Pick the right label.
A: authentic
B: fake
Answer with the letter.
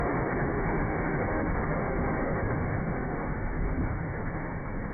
B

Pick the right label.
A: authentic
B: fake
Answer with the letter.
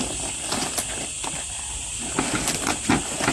A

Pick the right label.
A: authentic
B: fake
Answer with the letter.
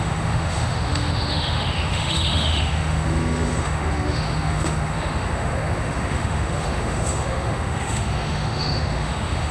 B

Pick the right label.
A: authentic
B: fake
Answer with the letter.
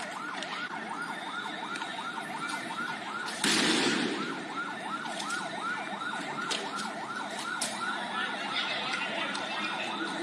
A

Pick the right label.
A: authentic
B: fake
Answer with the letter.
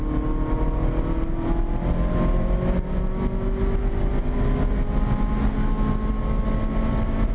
A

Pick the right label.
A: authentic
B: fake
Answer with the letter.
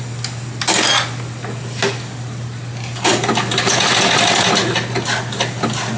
A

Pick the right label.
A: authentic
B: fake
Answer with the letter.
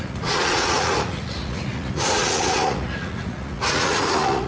B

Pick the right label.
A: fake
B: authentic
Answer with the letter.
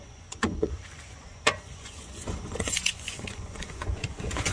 A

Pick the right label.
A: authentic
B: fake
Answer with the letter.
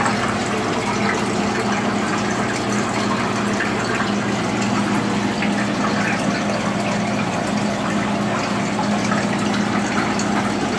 A